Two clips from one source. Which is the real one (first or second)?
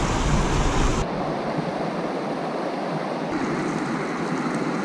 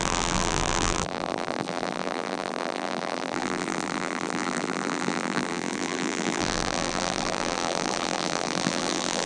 first